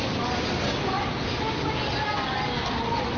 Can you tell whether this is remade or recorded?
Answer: recorded